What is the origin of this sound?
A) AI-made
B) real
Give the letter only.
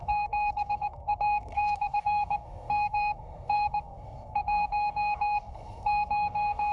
A